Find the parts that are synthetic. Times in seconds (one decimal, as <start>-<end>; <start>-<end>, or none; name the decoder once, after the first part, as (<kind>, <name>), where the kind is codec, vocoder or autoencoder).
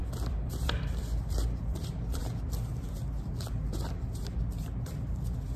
0.0-2.2 (vocoder, BigVGAN v2)